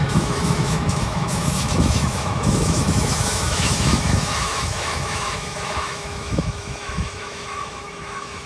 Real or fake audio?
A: fake